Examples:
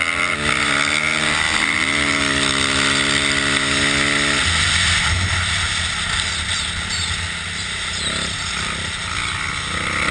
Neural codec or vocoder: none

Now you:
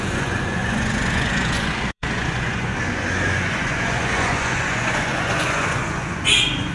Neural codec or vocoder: vocoder, Vocos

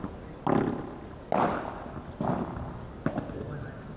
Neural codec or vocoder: none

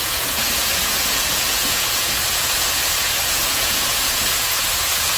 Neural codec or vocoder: vocoder, Vocos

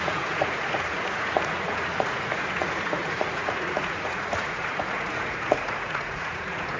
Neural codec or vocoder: vocoder, Vocos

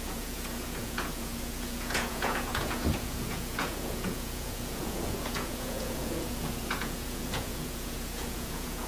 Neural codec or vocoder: vocoder, Vocos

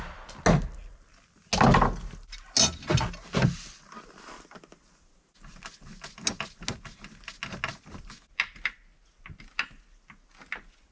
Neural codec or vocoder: none